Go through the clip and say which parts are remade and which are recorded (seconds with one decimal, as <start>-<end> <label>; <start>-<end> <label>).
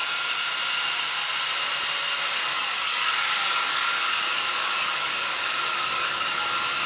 0.0-2.5 recorded; 2.5-6.4 remade; 6.4-6.9 recorded